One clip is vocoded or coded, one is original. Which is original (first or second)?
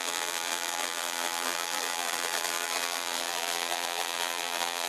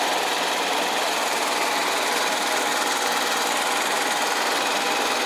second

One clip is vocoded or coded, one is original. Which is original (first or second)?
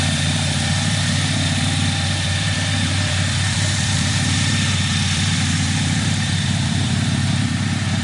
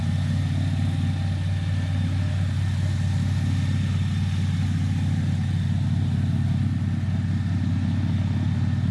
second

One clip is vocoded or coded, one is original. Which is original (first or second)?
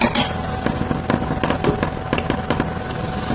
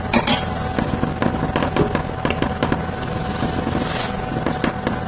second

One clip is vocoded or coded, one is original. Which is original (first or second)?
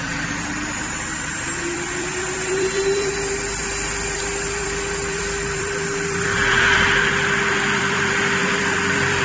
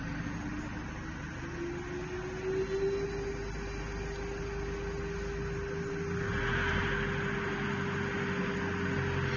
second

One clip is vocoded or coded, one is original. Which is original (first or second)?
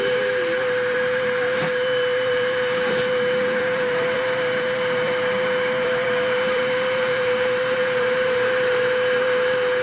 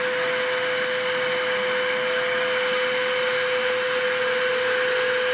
second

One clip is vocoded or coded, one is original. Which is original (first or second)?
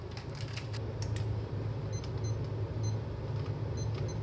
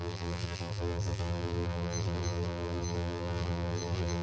first